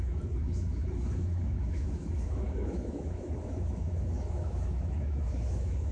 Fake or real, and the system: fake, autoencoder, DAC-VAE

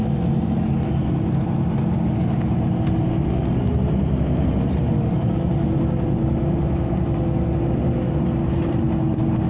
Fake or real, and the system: real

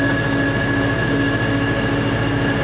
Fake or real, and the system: real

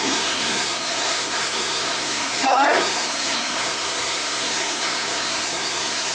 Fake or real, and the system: fake, codec, SNAC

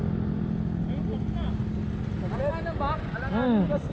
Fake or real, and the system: real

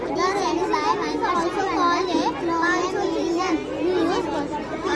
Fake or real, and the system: real